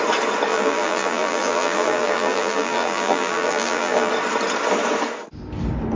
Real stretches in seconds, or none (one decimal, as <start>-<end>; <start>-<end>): 0.0-0.5; 4.1-6.0